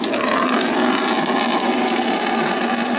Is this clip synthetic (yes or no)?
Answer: no